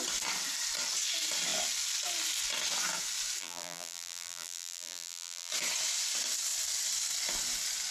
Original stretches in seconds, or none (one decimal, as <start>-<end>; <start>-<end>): 0.0-3.4; 5.5-7.9